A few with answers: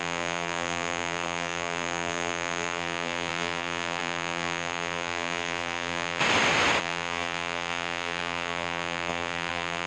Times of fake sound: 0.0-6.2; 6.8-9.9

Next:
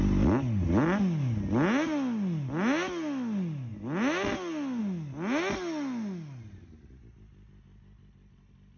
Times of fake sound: none

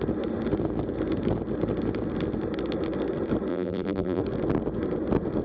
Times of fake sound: 3.5-4.2

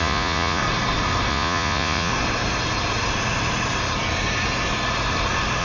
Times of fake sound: 0.0-0.6; 1.3-2.1

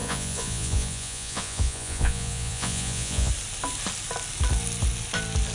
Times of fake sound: 0.0-3.3

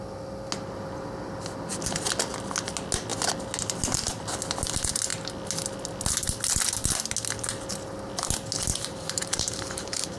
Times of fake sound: 8.7-10.2

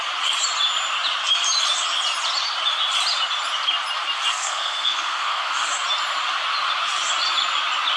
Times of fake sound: 4.3-5.7